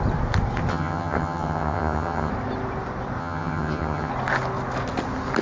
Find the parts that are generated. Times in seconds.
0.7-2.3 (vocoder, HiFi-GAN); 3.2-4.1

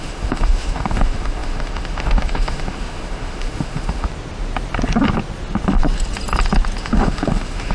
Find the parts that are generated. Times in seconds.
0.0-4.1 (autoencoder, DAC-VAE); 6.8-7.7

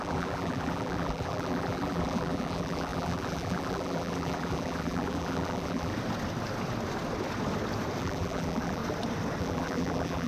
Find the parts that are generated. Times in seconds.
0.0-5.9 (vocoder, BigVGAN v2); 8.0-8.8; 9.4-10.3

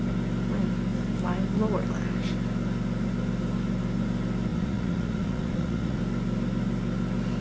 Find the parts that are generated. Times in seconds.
4.5-6.0 (vocoder, Vocos)

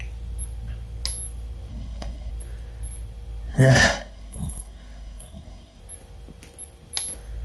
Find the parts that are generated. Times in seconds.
1.7-2.3 (codec, SNAC); 3.5-5.8